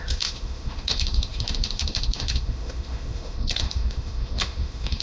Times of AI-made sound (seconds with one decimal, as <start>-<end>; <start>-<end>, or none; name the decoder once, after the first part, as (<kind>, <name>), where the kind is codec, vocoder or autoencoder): 0.0-5.0 (autoencoder, DAC-VAE)